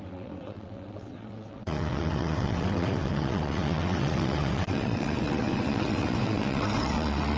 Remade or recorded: remade